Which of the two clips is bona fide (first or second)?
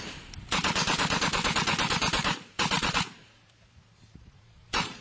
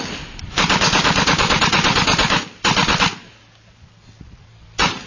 second